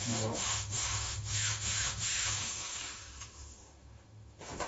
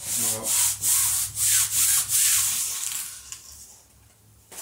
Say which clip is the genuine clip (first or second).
second